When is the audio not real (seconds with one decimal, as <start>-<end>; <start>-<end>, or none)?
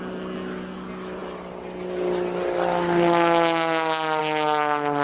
none